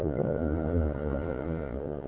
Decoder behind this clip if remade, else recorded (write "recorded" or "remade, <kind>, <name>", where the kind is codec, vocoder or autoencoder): remade, vocoder, Vocos